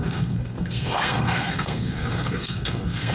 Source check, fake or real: fake